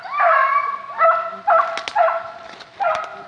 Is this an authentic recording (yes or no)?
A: yes